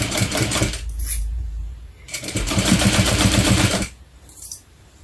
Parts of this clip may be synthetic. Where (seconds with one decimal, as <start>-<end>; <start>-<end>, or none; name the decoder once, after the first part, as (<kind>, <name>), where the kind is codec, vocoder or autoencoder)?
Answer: 0.0-0.5 (vocoder, BigVGAN v2); 1.2-5.0